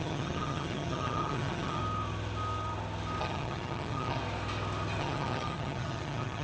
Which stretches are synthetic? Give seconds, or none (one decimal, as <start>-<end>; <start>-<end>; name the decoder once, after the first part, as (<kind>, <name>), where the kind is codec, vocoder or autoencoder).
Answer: 0.0-1.8 (vocoder, HiFi-GAN); 3.2-4.2; 5.0-6.4